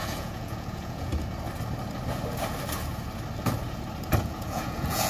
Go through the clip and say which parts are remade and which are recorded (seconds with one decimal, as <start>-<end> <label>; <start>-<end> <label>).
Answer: 0.0-1.1 remade; 1.1-4.2 recorded; 4.2-5.1 remade